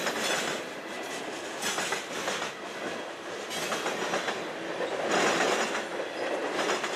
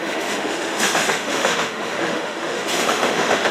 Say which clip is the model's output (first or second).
second